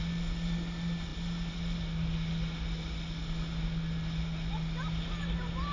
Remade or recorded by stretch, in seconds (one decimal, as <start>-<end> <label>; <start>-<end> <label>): 0.0-5.7 recorded